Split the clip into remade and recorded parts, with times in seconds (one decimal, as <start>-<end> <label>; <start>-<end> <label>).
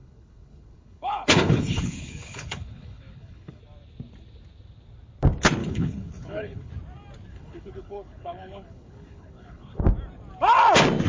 0.0-3.6 remade; 3.6-5.6 recorded; 5.6-6.7 remade; 6.7-7.3 recorded; 7.3-9.8 remade; 9.8-11.1 recorded